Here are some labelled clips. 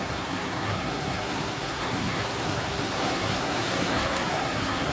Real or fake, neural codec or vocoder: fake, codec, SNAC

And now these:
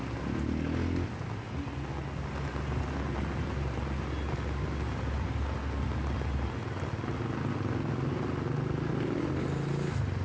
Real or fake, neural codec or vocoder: real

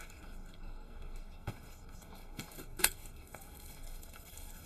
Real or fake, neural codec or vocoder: fake, codec, SNAC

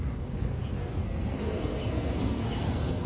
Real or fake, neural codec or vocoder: fake, codec, SNAC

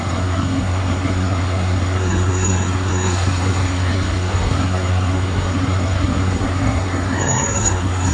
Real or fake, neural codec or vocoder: fake, codec, SNAC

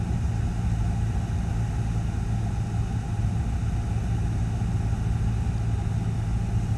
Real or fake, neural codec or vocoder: real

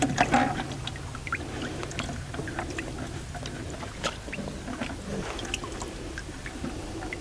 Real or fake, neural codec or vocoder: real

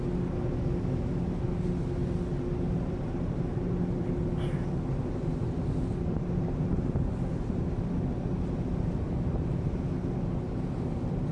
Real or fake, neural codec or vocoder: real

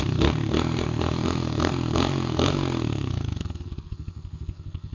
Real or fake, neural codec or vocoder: fake, codec, SNAC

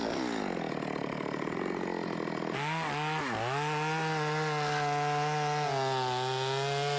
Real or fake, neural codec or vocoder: real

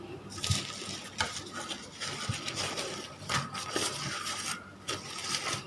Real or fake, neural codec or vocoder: real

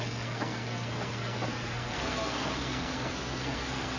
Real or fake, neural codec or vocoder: fake, codec, SNAC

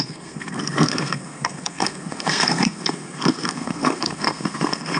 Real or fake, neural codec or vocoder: fake, codec, SNAC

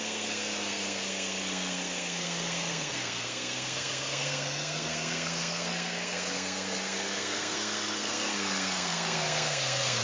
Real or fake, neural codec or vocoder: fake, codec, SNAC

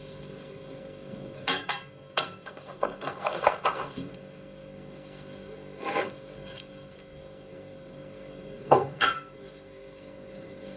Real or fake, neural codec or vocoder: fake, codec, SNAC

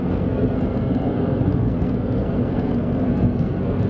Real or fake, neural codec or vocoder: fake, codec, SNAC